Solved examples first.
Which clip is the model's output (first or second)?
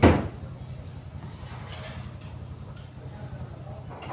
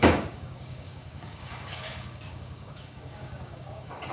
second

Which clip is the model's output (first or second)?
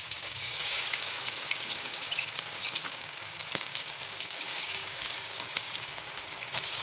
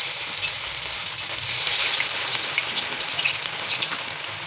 first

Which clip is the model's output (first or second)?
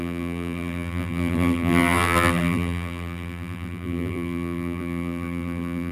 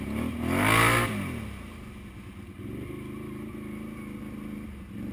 first